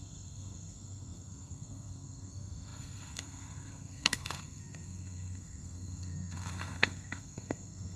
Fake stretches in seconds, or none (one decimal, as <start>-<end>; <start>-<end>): 0.0-8.0